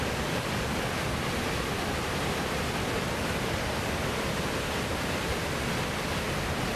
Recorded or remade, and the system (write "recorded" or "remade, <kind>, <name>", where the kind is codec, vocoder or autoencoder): recorded